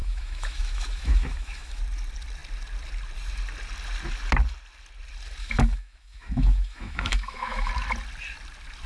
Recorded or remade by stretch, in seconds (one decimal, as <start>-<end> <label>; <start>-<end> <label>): 0.0-1.8 remade; 1.8-5.4 recorded; 5.4-7.7 remade; 7.7-8.9 recorded